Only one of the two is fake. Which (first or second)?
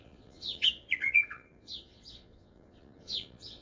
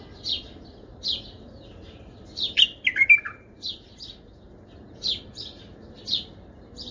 first